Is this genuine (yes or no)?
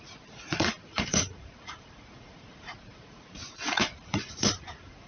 no